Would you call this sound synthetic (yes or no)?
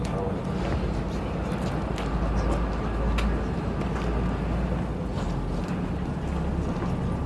no